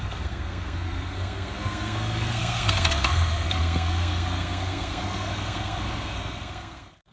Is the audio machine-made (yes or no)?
yes